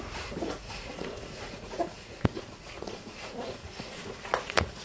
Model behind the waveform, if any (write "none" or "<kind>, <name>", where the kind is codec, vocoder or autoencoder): vocoder, Vocos